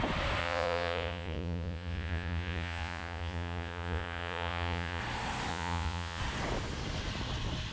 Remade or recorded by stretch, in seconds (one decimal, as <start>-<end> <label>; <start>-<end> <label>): 0.0-0.4 recorded; 0.4-5.0 remade; 5.0-5.5 recorded; 5.5-6.2 remade; 6.2-7.7 recorded